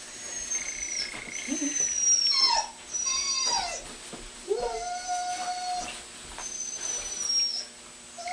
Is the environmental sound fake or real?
real